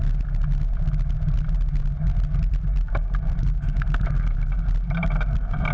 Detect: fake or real real